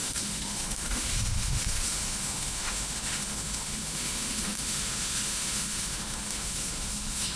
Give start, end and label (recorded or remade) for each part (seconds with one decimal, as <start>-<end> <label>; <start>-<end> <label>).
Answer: 0.0-7.4 remade